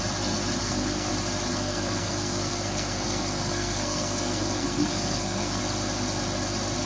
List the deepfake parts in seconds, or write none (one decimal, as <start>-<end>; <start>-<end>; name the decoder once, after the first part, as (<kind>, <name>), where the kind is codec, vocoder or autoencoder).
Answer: 0.6-1.1 (codec, SNAC); 1.5-5.6